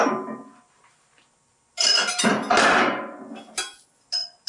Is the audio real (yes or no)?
yes